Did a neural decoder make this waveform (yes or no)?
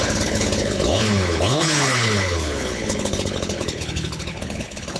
yes